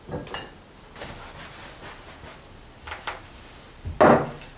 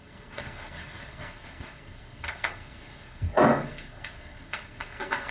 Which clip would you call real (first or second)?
first